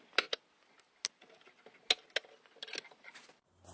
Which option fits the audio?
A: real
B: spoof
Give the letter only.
A